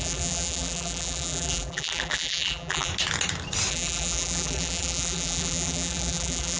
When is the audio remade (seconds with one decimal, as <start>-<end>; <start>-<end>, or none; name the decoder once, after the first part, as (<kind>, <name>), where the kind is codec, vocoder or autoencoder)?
0.0-2.9 (vocoder, BigVGAN v2); 3.7-6.6